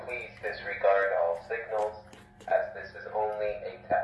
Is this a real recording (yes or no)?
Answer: yes